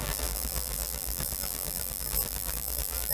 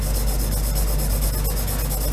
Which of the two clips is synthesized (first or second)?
first